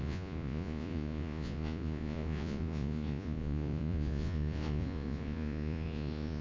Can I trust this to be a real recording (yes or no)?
no